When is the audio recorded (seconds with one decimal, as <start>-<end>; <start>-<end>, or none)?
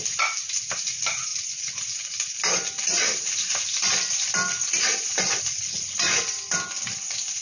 0.0-7.4